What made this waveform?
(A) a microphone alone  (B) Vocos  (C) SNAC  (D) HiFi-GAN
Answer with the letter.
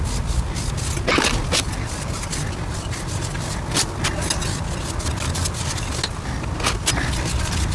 A